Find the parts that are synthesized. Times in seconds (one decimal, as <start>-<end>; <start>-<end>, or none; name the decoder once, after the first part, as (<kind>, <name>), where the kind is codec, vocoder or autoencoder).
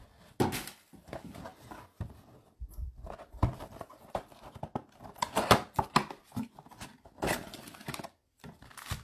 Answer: none